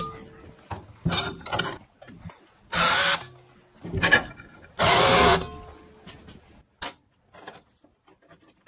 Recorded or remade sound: recorded